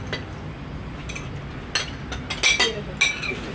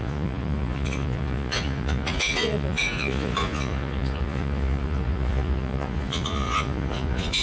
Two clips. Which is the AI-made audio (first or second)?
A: second